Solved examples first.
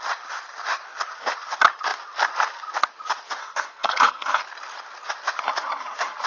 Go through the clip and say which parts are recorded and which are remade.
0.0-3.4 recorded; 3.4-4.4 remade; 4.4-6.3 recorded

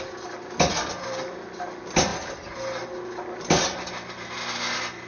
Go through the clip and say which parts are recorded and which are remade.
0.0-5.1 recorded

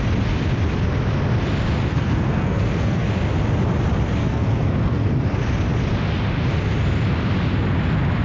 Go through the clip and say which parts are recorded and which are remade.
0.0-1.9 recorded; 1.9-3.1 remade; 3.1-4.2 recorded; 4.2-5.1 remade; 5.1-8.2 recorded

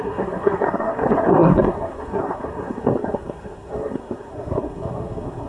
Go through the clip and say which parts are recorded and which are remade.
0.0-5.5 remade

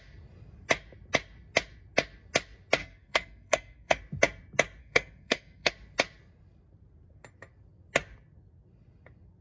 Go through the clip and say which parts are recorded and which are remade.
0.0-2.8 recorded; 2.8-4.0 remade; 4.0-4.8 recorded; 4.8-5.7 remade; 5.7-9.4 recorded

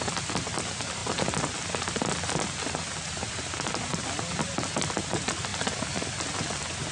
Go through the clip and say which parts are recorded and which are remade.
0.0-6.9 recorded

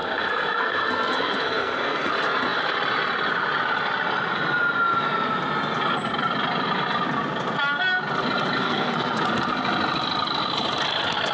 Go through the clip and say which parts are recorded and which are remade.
0.0-2.1 remade; 2.1-8.6 recorded; 8.6-9.2 remade; 9.2-11.3 recorded